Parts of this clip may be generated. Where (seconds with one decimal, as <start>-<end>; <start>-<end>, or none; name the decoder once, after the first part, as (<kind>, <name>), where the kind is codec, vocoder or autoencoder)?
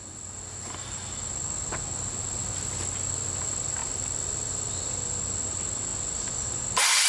none